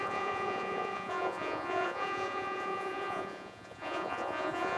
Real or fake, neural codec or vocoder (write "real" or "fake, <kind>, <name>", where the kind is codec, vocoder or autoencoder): fake, vocoder, Vocos